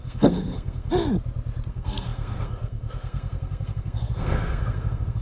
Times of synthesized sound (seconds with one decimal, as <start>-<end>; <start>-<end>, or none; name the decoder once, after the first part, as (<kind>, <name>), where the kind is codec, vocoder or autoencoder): 0.0-0.9 (codec, SNAC); 1.7-5.2